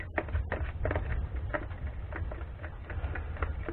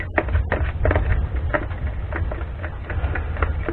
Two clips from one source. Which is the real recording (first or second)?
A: second